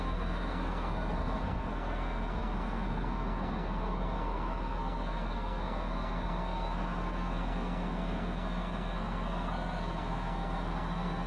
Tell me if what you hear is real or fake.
fake